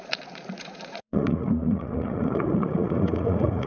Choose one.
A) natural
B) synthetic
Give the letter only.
B